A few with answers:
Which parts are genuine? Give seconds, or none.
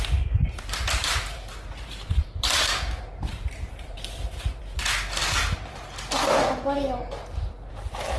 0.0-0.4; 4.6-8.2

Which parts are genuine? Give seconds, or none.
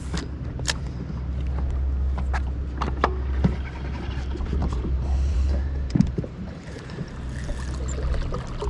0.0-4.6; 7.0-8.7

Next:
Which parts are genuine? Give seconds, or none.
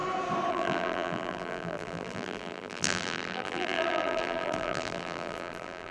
0.0-0.5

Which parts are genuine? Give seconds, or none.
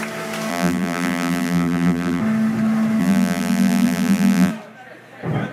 0.0-0.5; 2.2-3.0; 4.5-5.5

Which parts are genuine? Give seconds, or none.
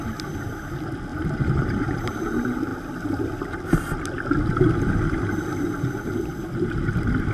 0.0-1.1; 2.2-7.3